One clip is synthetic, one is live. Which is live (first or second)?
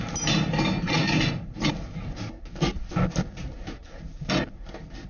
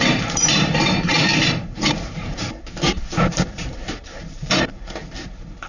first